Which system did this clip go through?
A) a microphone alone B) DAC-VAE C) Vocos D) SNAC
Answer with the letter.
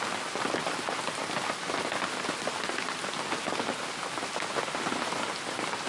A